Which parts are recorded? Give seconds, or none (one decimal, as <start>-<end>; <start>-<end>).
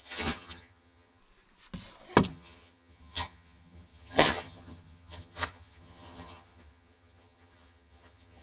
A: 1.2-2.3